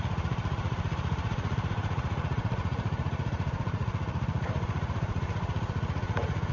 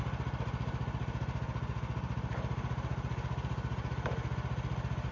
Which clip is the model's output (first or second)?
first